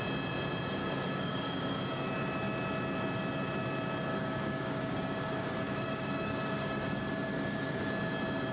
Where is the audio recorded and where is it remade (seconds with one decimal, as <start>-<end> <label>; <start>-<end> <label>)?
0.0-0.8 recorded; 0.8-1.8 remade; 1.8-4.1 recorded; 4.1-7.9 remade; 7.9-8.5 recorded